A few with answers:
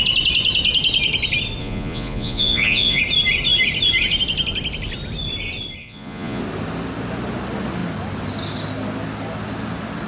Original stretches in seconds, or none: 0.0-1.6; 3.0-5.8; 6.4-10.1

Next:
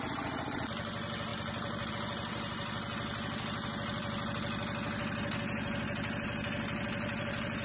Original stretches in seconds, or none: 0.0-7.6